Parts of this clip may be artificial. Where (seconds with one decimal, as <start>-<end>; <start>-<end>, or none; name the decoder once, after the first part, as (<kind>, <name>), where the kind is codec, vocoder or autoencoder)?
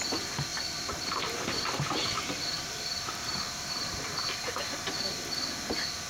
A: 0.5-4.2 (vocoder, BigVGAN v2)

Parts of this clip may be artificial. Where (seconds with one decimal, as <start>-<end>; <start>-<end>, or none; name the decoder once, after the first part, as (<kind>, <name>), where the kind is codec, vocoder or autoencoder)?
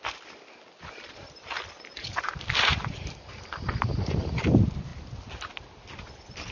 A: 2.0-4.3 (vocoder, BigVGAN v2)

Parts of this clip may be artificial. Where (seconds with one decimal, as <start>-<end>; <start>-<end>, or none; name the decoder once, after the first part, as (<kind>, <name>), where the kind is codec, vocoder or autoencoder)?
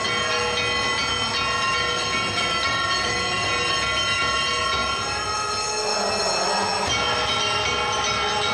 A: none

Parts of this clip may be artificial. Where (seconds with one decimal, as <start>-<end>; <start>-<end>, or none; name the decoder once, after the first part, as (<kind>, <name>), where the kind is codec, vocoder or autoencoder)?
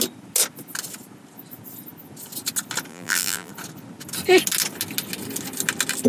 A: 2.9-3.5 (vocoder, BigVGAN v2)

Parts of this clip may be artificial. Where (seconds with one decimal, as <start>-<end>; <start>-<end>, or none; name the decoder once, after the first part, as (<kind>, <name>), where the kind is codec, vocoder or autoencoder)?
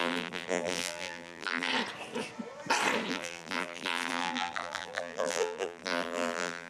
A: 0.0-1.7 (vocoder, BigVGAN v2); 3.1-6.7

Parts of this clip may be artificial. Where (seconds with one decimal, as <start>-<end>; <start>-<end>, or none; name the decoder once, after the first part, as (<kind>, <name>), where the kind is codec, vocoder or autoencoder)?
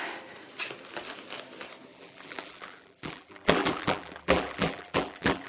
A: 1.9-5.5 (vocoder, BigVGAN v2)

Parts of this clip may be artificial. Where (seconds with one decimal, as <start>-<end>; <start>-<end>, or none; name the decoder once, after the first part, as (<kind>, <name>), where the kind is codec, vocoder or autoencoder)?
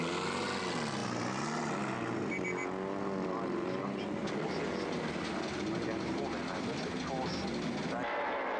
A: none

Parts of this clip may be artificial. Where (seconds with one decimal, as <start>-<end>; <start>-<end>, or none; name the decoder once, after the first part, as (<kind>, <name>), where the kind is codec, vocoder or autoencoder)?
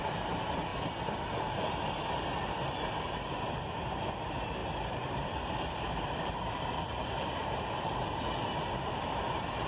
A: 4.6-8.2 (vocoder, BigVGAN v2)